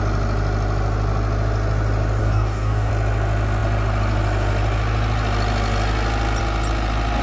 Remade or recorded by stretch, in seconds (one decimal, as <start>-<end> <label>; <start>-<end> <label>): 0.0-2.2 recorded; 2.2-2.9 remade; 2.9-7.2 recorded